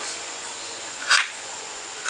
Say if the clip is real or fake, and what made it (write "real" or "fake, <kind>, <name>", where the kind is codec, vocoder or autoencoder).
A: fake, vocoder, Vocos